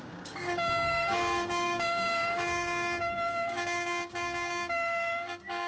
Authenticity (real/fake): fake